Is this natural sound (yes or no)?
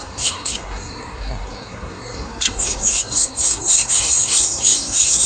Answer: no